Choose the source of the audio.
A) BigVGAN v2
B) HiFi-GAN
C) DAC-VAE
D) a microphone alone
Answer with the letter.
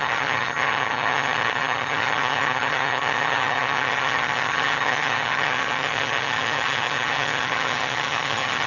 B